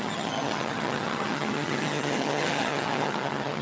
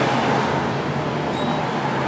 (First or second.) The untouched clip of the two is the second